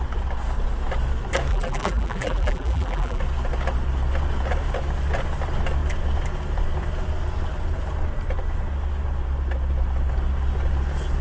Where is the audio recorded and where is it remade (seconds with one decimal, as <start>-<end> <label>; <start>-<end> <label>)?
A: 0.0-1.5 recorded; 1.5-3.2 remade; 3.2-11.2 recorded